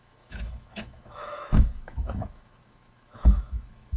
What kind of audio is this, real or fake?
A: fake